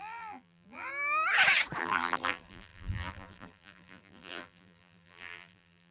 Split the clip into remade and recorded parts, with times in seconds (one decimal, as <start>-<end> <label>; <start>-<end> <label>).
0.0-0.9 remade; 0.9-1.8 recorded; 1.8-5.9 remade